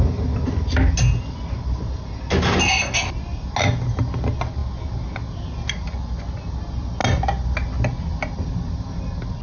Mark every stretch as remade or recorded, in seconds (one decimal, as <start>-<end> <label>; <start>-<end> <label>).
0.0-9.4 recorded